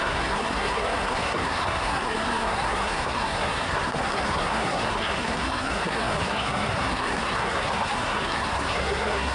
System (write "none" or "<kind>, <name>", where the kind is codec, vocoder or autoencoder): codec, SNAC